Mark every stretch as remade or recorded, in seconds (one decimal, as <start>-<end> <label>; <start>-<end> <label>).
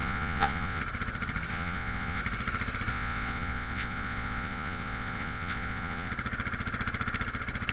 0.0-0.8 remade; 0.8-1.5 recorded; 1.5-2.2 remade; 2.2-2.9 recorded; 2.9-6.1 remade; 6.1-7.7 recorded